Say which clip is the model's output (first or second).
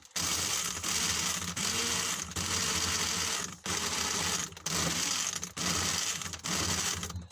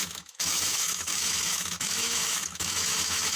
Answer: second